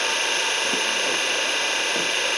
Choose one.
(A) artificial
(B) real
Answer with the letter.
A